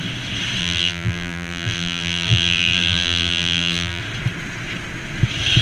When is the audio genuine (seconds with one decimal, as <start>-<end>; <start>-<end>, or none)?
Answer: 0.0-0.6; 4.0-5.6